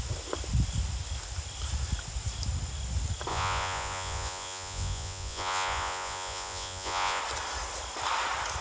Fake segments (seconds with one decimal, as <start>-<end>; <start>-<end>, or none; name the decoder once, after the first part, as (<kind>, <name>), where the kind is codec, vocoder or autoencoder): 3.3-7.2 (vocoder, Vocos)